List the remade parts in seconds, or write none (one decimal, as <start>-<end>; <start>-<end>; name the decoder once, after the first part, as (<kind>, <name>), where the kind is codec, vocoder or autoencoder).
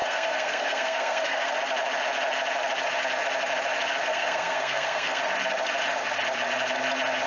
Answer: 0.0-1.5 (codec, SNAC); 4.1-5.2